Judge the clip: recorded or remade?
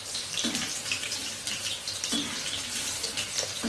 recorded